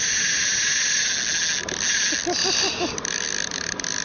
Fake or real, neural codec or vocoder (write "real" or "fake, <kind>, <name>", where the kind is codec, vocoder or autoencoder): real